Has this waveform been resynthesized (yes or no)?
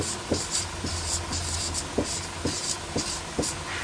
no